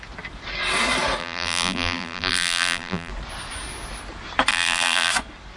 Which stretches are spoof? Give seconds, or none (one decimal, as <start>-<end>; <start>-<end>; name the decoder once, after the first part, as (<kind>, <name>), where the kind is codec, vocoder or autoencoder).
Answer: 1.2-3.1 (vocoder, BigVGAN v2); 4.5-5.1

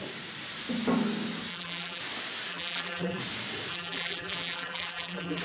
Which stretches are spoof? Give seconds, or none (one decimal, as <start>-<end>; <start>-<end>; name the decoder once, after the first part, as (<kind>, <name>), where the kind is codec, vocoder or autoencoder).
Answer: 1.5-2.0 (vocoder, BigVGAN v2); 2.5-3.2; 3.7-5.4